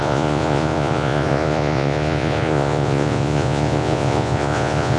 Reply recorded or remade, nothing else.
remade